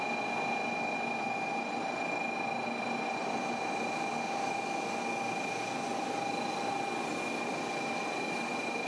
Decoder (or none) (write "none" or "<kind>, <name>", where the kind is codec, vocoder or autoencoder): none